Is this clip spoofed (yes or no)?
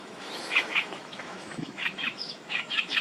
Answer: yes